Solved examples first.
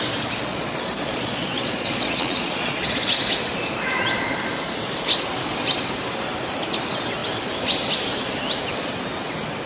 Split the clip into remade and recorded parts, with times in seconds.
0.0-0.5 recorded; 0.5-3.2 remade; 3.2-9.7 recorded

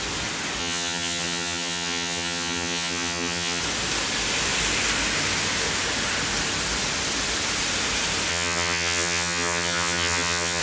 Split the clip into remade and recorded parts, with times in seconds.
0.0-0.6 recorded; 0.6-3.6 remade; 3.6-8.3 recorded; 8.3-10.6 remade

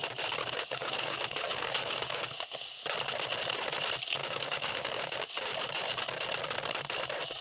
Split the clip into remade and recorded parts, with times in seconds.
0.0-0.4 recorded; 0.4-2.8 remade; 2.8-4.2 recorded; 4.2-5.3 remade; 5.3-7.4 recorded

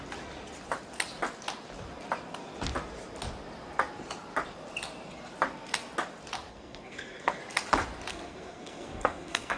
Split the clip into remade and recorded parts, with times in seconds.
0.0-6.5 recorded; 6.5-7.4 remade; 7.4-8.1 recorded; 8.1-9.6 remade

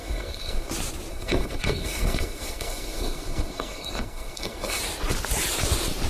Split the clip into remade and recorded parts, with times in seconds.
0.0-0.7 remade; 0.7-1.1 recorded; 1.1-4.8 remade; 4.8-6.1 recorded

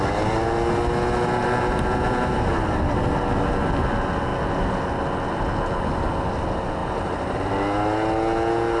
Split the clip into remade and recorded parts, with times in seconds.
0.0-1.4 recorded; 1.4-3.0 remade; 3.0-6.8 recorded; 6.8-7.5 remade; 7.5-8.8 recorded